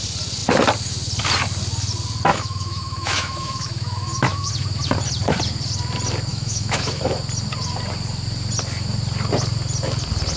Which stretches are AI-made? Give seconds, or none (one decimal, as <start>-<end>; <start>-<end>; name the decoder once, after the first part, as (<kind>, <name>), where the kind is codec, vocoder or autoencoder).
2.3-4.5 (autoencoder, DAC-VAE); 6.3-7.0